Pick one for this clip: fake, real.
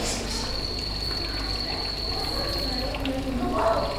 real